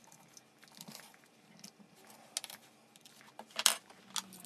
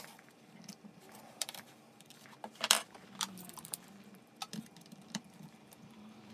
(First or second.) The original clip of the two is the first